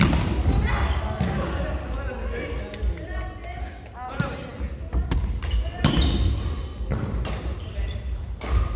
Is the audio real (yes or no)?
yes